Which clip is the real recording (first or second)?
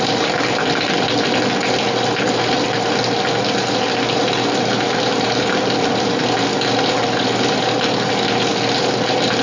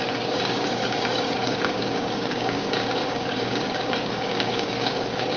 first